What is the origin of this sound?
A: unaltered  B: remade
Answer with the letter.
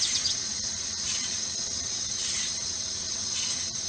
B